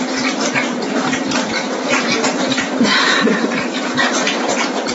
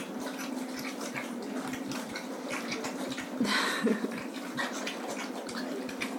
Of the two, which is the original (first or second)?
second